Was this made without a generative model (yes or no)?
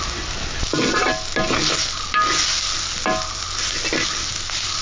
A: yes